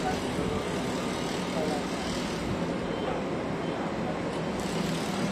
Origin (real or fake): real